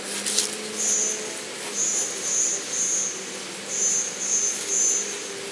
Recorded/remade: recorded